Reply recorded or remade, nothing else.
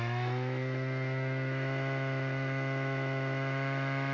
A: remade